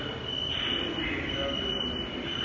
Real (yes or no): yes